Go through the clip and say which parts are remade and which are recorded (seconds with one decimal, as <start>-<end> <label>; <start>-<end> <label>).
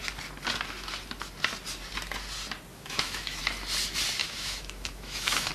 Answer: 0.0-2.7 recorded; 2.7-3.4 remade; 3.4-4.2 recorded; 4.2-5.5 remade